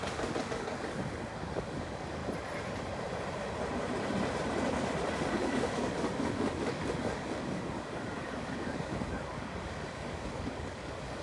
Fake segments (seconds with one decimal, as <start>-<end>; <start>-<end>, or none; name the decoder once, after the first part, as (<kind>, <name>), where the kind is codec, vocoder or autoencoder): 0.0-2.2 (codec, DAC); 5.1-11.2